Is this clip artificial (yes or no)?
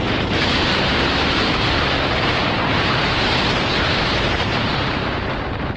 yes